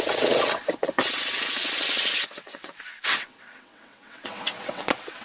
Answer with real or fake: fake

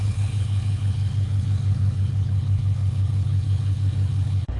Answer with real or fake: fake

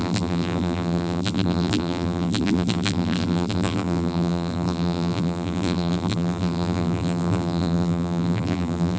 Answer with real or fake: fake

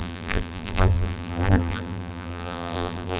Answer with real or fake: fake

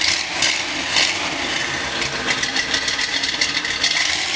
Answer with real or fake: real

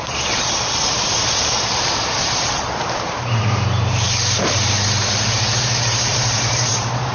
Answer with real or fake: fake